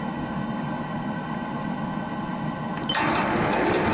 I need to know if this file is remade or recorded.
remade